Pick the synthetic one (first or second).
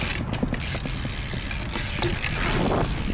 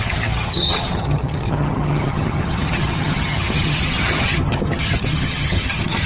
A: second